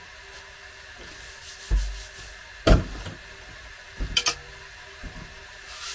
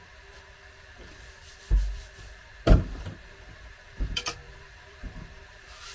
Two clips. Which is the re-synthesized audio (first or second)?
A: second